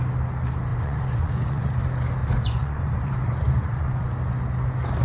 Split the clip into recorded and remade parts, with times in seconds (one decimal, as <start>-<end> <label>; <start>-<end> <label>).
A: 0.0-0.7 recorded; 0.7-1.7 remade; 1.7-2.2 recorded; 2.2-4.1 remade; 4.1-5.0 recorded